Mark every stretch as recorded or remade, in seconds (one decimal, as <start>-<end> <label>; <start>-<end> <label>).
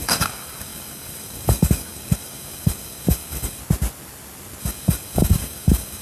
0.0-3.6 remade; 3.6-4.6 recorded; 4.6-6.0 remade